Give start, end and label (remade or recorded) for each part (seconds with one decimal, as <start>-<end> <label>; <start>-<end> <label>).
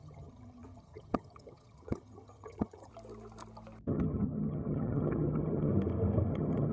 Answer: 0.0-2.9 remade; 2.9-3.9 recorded; 3.9-5.7 remade; 5.7-6.3 recorded; 6.3-6.7 remade